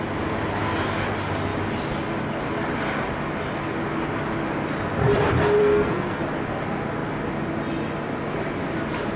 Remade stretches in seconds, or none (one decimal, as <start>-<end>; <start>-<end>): 5.6-6.2